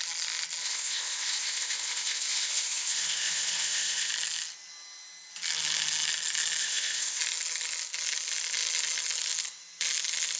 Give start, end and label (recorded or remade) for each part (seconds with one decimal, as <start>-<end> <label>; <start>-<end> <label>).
0.0-0.6 recorded; 0.6-4.1 remade; 4.1-6.6 recorded; 6.6-7.2 remade; 7.2-10.4 recorded

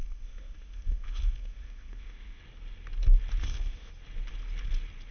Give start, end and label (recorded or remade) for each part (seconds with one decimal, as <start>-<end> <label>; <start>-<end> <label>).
0.0-2.4 remade; 2.4-3.4 recorded; 3.4-3.9 remade; 3.9-5.1 recorded

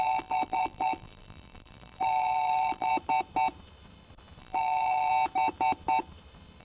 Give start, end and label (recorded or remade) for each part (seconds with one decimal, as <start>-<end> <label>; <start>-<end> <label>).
0.0-2.9 remade; 2.9-4.4 recorded; 4.4-5.1 remade; 5.1-6.6 recorded

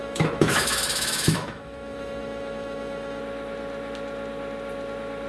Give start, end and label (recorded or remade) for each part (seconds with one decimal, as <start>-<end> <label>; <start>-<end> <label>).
0.0-3.2 remade; 3.2-5.3 recorded